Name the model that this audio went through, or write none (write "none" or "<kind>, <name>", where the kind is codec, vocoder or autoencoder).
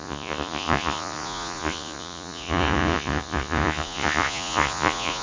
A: vocoder, Vocos